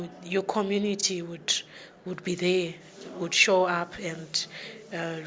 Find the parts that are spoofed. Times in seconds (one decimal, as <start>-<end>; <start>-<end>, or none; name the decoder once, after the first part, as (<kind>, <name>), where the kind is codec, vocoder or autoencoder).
none